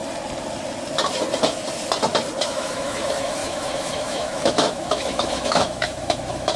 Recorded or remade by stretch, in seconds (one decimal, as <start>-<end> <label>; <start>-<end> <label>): 0.0-2.4 recorded; 2.4-6.6 remade